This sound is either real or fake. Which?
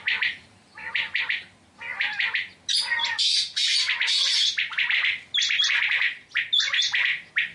real